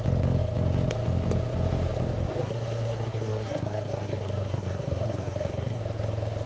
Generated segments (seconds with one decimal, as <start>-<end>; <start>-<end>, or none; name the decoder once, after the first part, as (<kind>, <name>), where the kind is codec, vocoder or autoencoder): 2.4-5.8 (codec, SNAC)